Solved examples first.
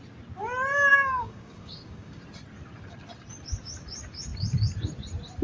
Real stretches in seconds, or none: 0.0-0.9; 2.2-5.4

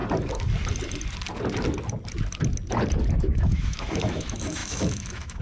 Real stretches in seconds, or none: 0.0-3.2

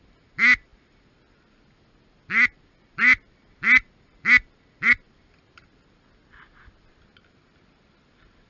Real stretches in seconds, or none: 0.0-8.5

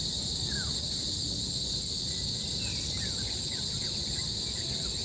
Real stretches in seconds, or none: 1.0-5.0

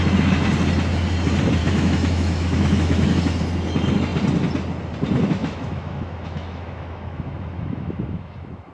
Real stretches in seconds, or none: 0.0-1.6; 3.2-5.4